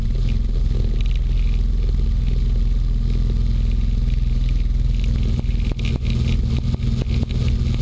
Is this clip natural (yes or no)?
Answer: yes